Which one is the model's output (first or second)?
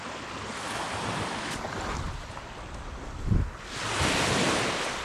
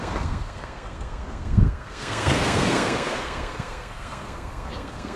second